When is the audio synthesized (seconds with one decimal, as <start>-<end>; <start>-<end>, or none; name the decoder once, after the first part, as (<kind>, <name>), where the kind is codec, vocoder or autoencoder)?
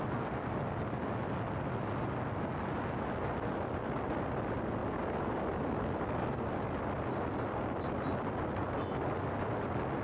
none